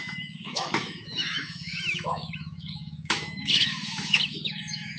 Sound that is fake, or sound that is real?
fake